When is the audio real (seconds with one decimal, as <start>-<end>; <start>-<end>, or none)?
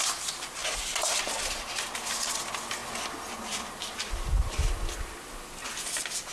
0.0-6.3